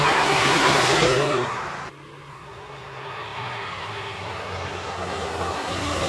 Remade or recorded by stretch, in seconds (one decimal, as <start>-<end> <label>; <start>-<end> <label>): 0.0-1.6 remade; 1.6-2.3 recorded; 2.3-6.1 remade